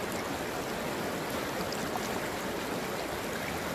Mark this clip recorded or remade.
recorded